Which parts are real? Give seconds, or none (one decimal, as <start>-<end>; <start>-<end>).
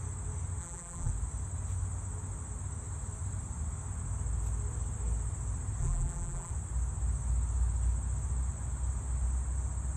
0.0-0.6; 1.1-5.8; 6.5-10.0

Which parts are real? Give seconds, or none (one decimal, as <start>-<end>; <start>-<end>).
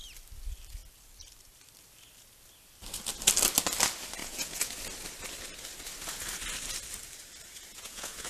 0.0-4.2; 4.7-7.7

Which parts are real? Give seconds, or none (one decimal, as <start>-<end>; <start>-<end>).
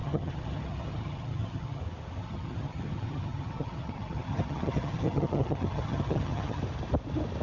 1.8-2.2; 6.6-7.4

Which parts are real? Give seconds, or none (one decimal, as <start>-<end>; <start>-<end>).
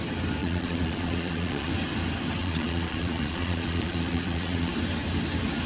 0.0-0.4; 1.7-2.4; 4.7-5.7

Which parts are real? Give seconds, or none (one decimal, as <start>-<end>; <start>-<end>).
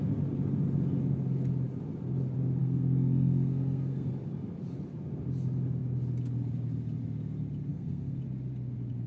0.0-2.6; 4.1-7.7; 8.2-9.1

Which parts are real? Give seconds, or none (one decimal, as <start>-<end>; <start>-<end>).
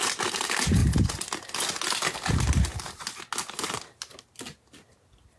0.0-5.4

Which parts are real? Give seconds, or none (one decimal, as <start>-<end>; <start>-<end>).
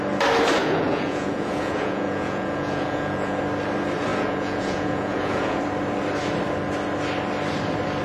0.0-0.6; 3.4-4.1; 5.6-8.0